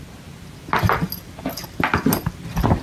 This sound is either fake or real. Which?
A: real